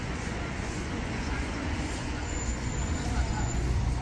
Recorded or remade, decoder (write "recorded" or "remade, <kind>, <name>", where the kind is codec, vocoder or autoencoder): remade, vocoder, Vocos